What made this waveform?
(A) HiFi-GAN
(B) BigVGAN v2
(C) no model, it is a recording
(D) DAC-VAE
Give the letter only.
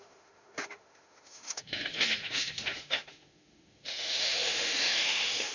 D